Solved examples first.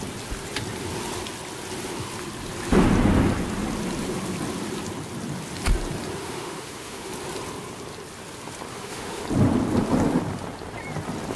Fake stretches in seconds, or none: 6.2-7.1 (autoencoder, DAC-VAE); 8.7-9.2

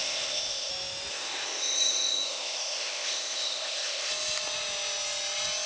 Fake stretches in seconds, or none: 0.0-0.7 (codec, ZipCodec); 1.1-4.1

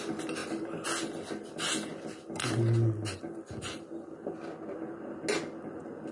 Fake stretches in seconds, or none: none

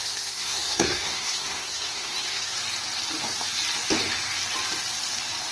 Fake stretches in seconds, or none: 0.0-2.6 (codec, SNAC)

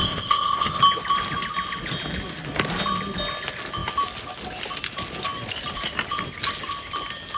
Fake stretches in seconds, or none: 0.0-0.8 (codec, ZipCodec)

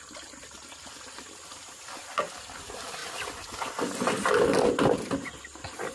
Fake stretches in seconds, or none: none

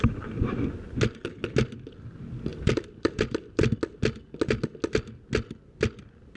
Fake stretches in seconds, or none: 2.5-3.7 (vocoder, BigVGAN v2)